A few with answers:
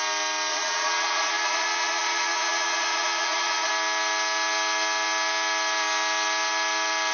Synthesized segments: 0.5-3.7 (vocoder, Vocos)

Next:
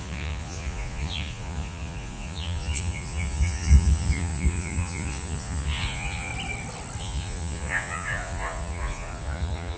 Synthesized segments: 0.0-6.3 (vocoder, Vocos); 7.0-9.8

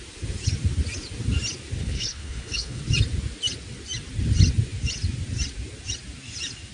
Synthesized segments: 1.8-2.8 (codec, HILCodec)